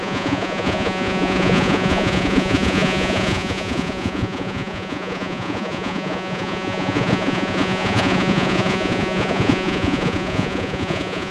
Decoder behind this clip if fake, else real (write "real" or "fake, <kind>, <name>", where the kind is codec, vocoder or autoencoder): fake, vocoder, Vocos